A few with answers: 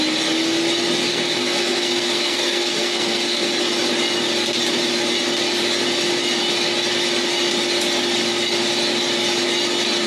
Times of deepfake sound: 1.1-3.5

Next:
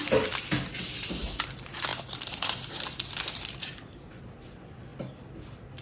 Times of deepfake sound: none

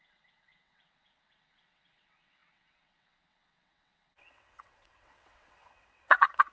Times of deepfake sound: 0.0-6.5

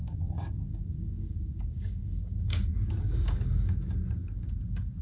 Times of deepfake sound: 0.0-5.0